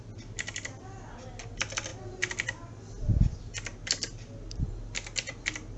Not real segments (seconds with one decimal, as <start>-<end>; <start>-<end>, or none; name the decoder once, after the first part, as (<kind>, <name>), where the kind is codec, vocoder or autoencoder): none